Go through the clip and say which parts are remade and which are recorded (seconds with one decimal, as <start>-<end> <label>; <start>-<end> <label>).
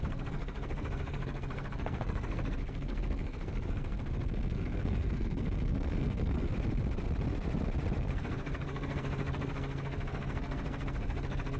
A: 0.0-6.5 remade; 6.5-8.0 recorded; 8.0-11.6 remade